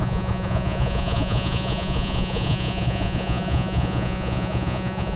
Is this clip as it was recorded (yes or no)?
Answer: no